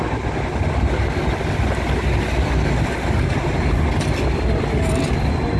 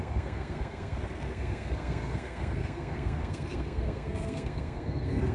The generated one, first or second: second